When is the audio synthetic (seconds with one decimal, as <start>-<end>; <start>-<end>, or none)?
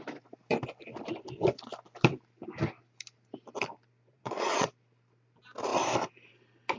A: 4.1-4.7